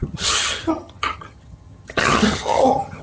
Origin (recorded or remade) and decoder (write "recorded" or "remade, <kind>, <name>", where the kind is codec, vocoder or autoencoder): remade, vocoder, HiFi-GAN